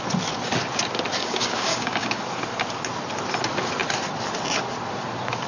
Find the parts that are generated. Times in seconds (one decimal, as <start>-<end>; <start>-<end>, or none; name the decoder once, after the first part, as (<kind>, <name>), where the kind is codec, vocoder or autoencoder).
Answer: 1.2-2.2 (codec, DAC)

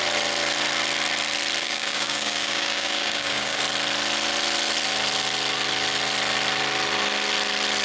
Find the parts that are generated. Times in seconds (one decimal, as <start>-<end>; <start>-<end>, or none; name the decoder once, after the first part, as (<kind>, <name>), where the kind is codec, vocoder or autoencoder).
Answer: 1.6-3.6 (codec, DAC)

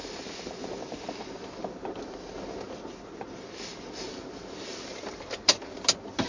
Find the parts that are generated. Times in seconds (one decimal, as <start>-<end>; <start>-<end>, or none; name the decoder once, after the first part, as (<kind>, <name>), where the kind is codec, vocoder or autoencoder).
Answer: none

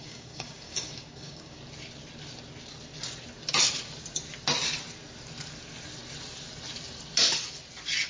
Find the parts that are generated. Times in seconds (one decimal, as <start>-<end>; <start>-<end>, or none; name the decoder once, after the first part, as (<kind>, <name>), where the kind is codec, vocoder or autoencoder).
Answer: 0.0-1.6 (codec, DAC)

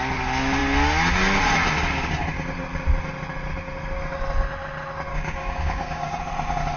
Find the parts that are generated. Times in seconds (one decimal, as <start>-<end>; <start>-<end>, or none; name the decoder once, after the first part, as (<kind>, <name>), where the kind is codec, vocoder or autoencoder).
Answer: 5.1-6.2 (codec, DAC)